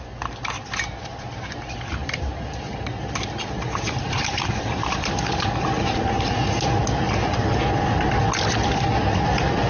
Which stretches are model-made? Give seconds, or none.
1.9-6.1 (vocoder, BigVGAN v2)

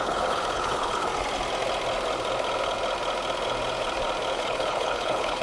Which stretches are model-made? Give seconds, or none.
0.0-1.1 (codec, HILCodec); 4.3-5.4

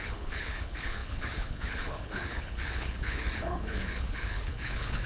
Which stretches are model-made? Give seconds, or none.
0.0-5.1 (codec, HILCodec)

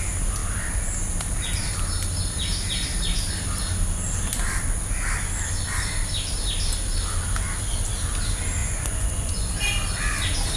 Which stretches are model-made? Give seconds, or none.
8.6-9.5 (vocoder, Vocos)

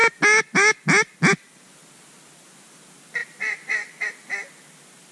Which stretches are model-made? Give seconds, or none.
3.2-4.1 (vocoder, Vocos)

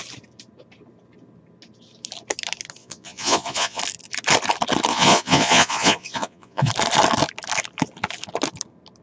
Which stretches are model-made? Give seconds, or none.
2.8-3.8 (vocoder, Vocos); 4.9-6.7